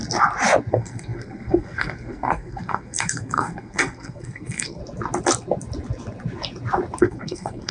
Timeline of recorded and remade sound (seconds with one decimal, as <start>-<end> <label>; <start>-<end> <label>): 0.0-0.7 recorded; 0.7-4.8 remade; 4.8-7.0 recorded; 7.0-7.7 remade